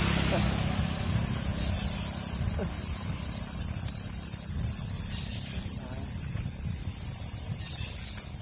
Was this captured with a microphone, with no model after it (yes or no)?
yes